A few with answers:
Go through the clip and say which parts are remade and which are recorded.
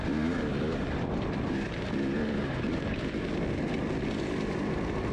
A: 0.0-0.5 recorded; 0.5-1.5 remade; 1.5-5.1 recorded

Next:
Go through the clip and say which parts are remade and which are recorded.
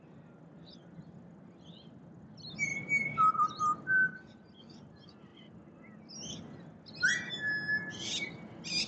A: 0.0-8.9 recorded